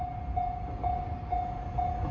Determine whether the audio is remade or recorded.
recorded